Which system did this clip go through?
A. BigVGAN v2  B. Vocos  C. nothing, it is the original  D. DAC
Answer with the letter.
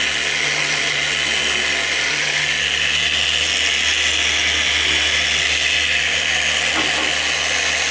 C